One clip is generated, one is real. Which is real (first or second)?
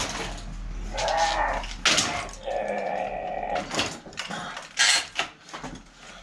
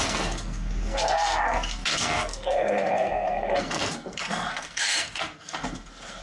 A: first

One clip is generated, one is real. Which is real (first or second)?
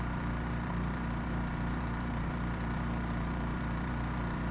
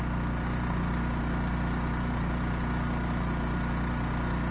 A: second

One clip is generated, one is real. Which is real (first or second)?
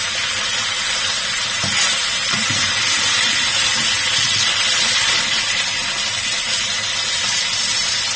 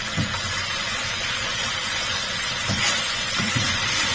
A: first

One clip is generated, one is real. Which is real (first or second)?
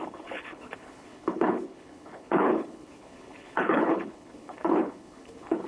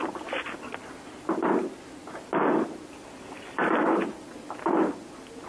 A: second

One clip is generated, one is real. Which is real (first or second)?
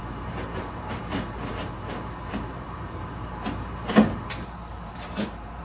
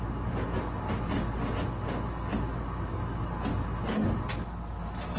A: second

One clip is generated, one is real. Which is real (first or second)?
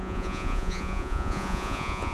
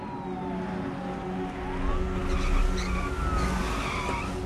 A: second